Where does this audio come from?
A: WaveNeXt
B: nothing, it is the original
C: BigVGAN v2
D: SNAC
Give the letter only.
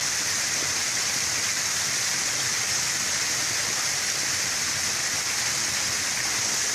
B